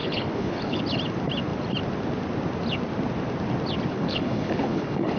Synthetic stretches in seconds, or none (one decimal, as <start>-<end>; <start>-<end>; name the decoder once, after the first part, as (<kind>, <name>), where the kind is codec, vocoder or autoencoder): 0.0-0.8 (codec, HILCodec); 3.9-5.2